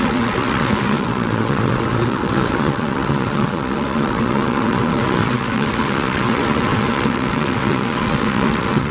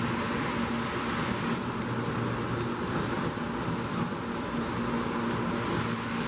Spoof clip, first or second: first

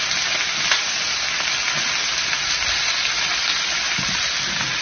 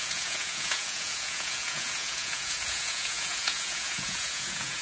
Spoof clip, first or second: second